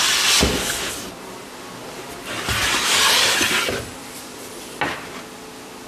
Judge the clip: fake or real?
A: real